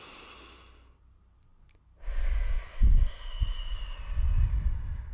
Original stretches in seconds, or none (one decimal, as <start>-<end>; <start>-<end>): 0.0-5.1